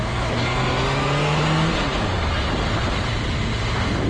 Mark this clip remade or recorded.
recorded